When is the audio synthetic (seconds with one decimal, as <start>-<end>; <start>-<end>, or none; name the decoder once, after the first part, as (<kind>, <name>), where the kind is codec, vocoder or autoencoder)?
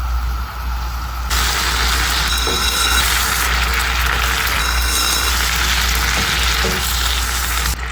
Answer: 2.3-3.0 (codec, SNAC); 4.6-5.3